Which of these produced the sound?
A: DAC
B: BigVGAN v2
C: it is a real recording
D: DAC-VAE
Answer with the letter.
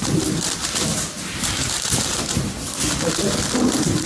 B